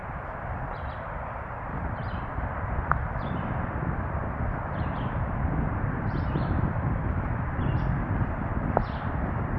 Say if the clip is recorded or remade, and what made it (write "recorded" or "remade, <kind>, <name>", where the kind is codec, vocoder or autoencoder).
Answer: remade, vocoder, BigVGAN v2